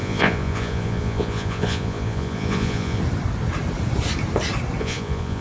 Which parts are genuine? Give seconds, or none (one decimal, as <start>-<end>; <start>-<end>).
3.0-4.8

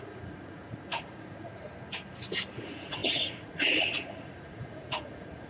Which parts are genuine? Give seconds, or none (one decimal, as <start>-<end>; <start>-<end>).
1.5-2.6

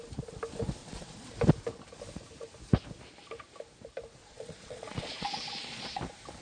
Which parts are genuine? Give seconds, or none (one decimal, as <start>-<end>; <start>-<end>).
0.0-0.8; 1.3-4.2; 6.0-6.4

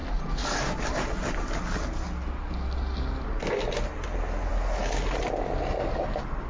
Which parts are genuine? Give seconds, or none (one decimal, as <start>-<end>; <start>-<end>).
0.0-6.5

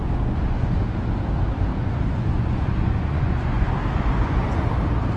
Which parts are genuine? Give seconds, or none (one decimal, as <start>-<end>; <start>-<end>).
0.8-1.7; 3.7-4.2; 4.7-5.2

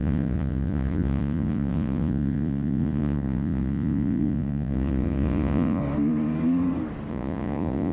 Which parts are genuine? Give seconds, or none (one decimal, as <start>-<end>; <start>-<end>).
5.8-7.1

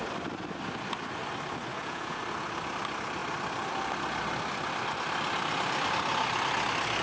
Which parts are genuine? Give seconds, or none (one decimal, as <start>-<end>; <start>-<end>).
0.0-1.7; 2.2-7.0